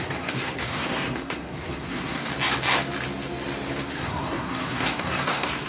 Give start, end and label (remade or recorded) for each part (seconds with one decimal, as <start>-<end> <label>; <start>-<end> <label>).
0.0-2.3 remade; 2.3-3.9 recorded; 3.9-5.7 remade